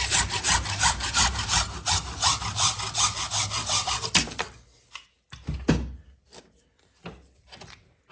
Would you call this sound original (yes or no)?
yes